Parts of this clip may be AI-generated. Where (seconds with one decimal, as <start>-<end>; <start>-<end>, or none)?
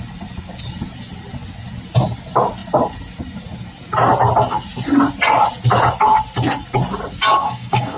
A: 7.3-8.0